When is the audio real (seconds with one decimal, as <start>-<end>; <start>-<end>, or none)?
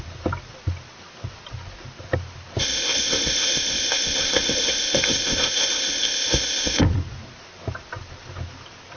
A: 0.0-2.6; 6.8-9.0